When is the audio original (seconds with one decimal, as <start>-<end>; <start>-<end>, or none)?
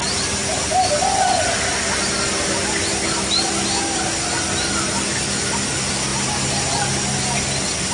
0.0-7.9